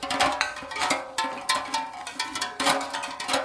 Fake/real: fake